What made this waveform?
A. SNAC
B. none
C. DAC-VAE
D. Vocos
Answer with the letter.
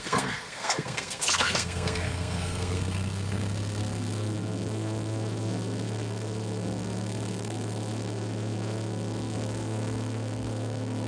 A